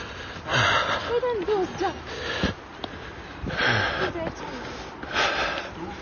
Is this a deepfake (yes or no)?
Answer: no